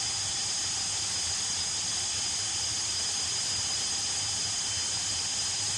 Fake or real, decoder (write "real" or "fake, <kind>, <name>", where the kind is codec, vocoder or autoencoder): real